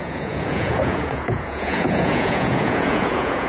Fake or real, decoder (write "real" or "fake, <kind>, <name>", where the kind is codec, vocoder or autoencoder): fake, vocoder, Vocos